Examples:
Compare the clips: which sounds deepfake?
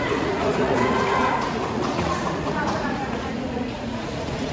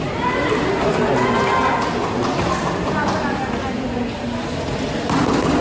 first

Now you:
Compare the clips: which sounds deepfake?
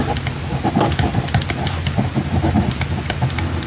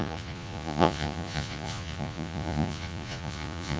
second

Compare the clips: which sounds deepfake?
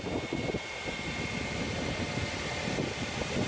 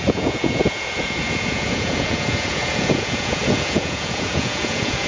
second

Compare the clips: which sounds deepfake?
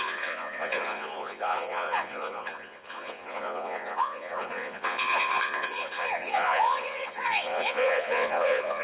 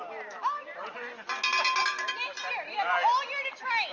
first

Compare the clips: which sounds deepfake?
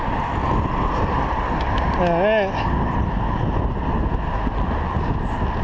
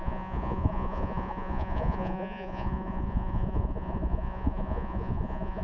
second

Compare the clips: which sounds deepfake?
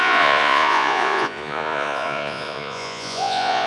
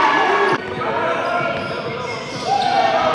first